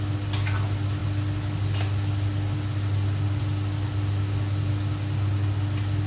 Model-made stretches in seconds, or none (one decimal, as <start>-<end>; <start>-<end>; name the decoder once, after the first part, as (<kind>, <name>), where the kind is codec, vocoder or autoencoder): none